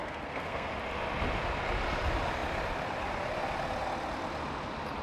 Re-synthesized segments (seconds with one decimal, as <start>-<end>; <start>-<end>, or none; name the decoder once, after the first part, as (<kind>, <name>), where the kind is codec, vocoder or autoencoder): 0.0-0.7 (codec, SNAC)